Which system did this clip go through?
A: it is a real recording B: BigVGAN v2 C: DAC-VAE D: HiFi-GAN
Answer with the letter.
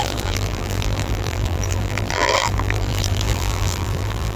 B